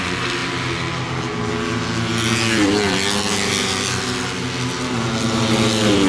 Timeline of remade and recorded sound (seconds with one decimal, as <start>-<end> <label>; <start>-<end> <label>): 0.0-6.1 recorded